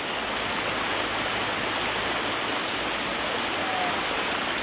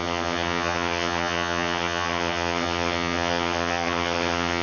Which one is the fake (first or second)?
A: second